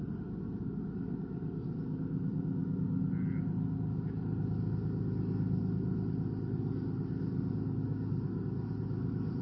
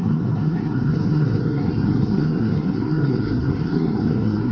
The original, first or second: first